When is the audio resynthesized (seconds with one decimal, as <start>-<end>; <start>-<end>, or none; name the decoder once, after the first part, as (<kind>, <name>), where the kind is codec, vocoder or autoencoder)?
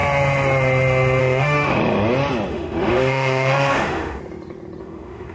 1.2-1.8 (autoencoder, DAC-VAE); 2.5-4.2; 4.8-5.3